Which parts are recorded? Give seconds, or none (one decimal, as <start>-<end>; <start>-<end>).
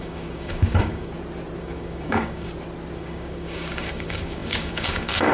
1.1-1.6; 2.5-3.0